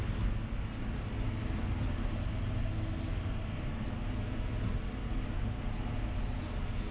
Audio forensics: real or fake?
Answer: real